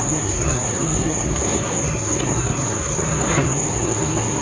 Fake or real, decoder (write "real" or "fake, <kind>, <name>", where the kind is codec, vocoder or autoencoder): fake, codec, SNAC